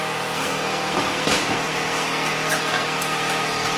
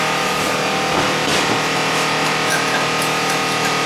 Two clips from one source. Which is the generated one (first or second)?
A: first